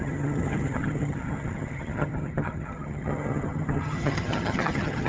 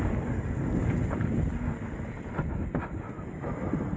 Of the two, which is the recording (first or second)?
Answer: second